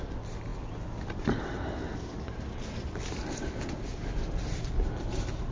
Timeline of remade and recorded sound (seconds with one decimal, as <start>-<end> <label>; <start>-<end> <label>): 0.0-5.5 recorded

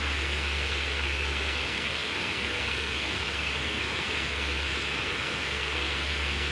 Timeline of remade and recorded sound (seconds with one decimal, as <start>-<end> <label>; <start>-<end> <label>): 0.0-6.5 remade

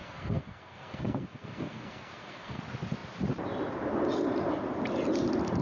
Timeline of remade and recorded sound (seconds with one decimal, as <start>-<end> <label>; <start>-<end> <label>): 0.0-2.6 remade; 2.6-5.6 recorded

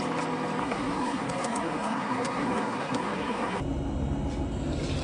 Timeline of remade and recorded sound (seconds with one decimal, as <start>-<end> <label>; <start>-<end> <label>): 0.0-0.6 recorded; 0.6-3.6 remade; 3.6-5.0 recorded

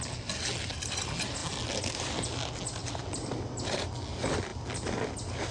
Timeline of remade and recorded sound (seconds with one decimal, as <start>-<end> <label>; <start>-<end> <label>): 0.0-5.5 recorded

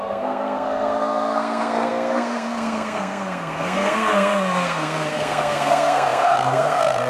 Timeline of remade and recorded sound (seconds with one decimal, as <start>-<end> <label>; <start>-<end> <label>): 0.0-7.1 remade